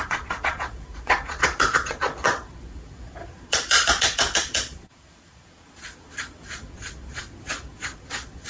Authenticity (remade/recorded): remade